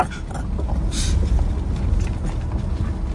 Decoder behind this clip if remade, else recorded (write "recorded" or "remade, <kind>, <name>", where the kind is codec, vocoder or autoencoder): recorded